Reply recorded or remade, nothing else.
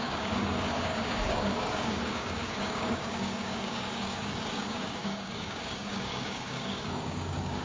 remade